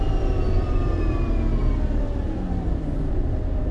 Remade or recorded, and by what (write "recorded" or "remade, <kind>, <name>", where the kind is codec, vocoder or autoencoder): recorded